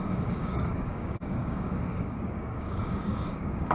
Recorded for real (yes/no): no